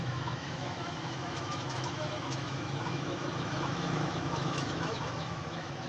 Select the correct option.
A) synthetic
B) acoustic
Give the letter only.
A